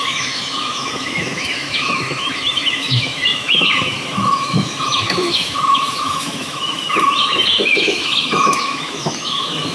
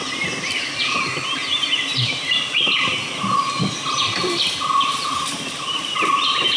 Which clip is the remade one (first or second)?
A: first